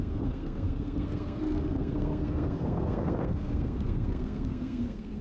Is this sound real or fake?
fake